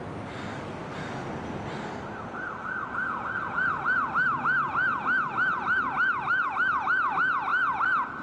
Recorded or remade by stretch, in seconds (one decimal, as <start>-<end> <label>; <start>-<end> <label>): 0.0-0.5 recorded; 0.5-1.0 remade; 1.0-4.9 recorded; 4.9-6.5 remade; 6.5-8.2 recorded